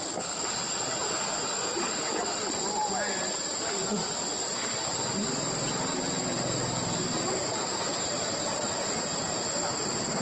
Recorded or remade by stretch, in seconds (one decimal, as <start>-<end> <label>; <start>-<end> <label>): 0.0-7.7 recorded; 7.7-10.2 remade

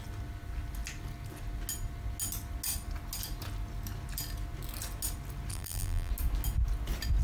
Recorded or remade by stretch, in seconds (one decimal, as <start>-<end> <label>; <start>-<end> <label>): 0.0-5.5 recorded; 5.5-6.1 remade; 6.1-7.2 recorded